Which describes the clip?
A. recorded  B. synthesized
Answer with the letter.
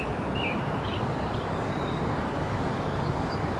B